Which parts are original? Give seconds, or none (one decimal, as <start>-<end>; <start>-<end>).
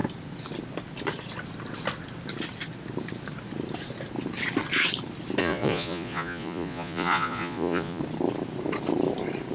0.0-5.4; 8.0-9.5